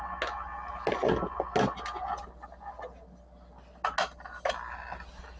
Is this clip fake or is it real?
real